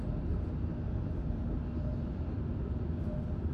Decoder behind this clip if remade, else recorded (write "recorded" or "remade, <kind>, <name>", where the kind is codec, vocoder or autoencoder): recorded